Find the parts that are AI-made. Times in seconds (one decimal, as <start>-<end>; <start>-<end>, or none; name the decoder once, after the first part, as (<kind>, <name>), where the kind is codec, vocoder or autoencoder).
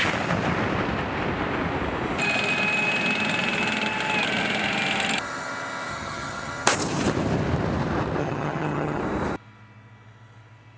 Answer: 5.9-6.5 (vocoder, HiFi-GAN); 8.2-9.0